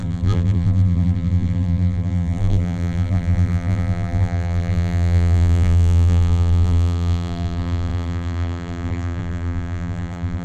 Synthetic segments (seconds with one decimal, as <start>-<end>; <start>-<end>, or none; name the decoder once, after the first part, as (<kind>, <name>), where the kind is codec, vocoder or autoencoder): 0.0-10.4 (vocoder, BigVGAN v2)